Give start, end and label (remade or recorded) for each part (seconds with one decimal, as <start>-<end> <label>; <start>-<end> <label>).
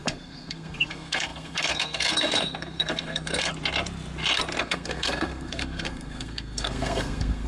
0.0-3.5 remade; 3.5-4.6 recorded; 4.6-7.5 remade